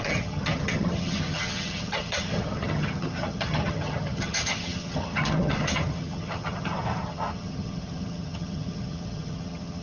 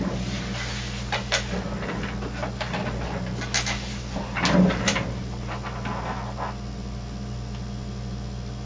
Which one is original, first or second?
second